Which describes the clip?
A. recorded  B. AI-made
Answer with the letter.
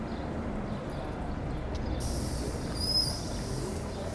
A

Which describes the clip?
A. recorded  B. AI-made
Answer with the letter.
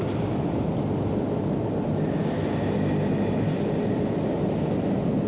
A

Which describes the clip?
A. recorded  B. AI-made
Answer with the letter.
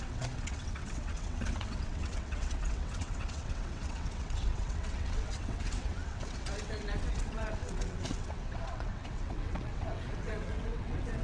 B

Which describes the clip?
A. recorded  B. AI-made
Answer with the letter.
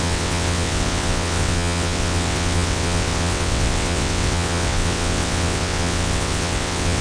B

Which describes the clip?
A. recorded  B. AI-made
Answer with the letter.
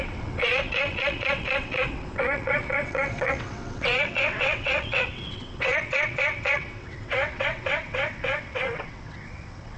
B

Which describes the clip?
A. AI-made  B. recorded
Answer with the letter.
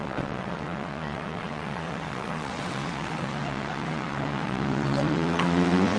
A